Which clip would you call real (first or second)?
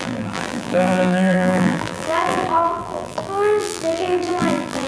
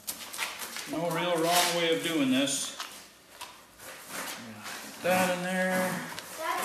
second